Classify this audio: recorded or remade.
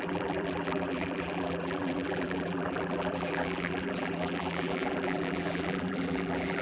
remade